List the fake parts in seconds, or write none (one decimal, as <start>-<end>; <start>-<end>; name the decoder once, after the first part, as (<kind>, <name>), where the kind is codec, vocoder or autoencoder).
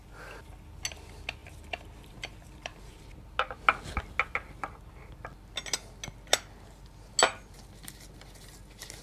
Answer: 1.4-3.0 (vocoder, BigVGAN v2)